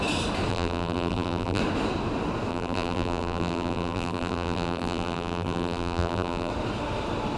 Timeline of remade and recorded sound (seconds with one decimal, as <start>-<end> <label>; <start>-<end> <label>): 0.0-0.5 recorded; 0.5-1.6 remade; 1.6-2.5 recorded; 2.5-6.5 remade; 6.5-7.4 recorded